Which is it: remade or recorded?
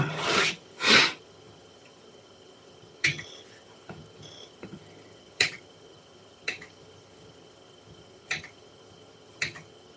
remade